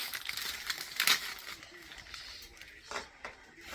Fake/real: real